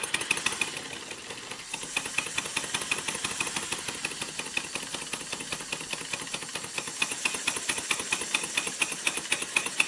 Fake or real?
real